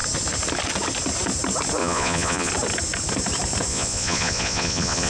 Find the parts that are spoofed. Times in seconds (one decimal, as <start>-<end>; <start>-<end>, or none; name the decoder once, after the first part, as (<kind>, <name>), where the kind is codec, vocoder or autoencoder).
1.8-2.5 (vocoder, Vocos); 3.7-5.1